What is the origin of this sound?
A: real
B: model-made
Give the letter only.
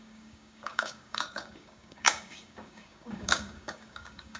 B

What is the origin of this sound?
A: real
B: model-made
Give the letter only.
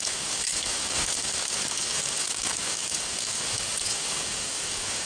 B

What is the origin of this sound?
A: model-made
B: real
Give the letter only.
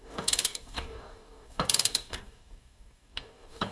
A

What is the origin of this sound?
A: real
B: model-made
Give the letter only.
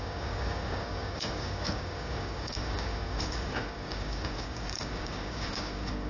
B